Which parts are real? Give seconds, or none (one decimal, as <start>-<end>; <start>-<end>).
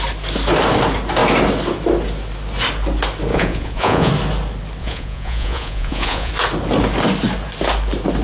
0.0-3.3; 4.1-4.8; 6.3-8.2